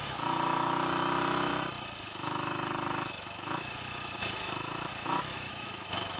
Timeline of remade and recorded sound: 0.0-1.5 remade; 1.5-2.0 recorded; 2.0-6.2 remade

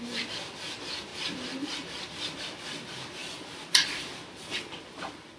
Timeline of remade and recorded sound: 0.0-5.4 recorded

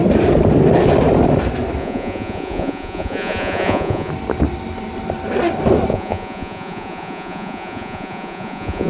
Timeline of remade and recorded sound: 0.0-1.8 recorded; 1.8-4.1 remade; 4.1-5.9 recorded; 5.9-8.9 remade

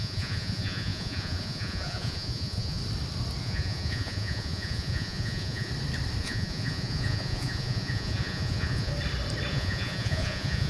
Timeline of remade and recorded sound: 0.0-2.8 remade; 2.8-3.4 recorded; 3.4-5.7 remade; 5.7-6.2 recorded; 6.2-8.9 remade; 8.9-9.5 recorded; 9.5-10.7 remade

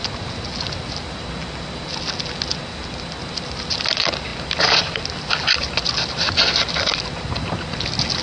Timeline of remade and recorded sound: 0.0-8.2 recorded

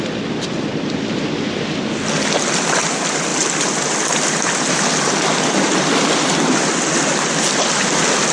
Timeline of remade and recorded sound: 0.0-3.3 recorded; 3.3-6.9 remade; 6.9-8.3 recorded